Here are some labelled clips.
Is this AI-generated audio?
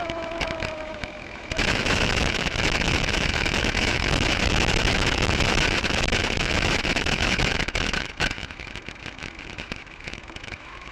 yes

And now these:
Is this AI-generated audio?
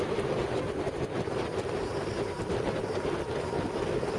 no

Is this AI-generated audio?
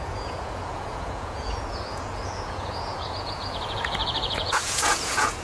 yes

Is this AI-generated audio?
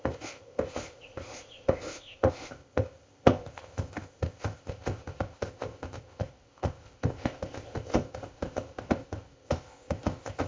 yes